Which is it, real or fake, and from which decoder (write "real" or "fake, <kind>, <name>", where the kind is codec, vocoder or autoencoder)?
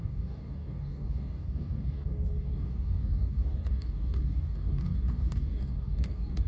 fake, codec, DAC